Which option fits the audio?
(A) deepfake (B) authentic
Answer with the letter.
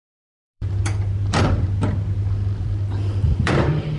A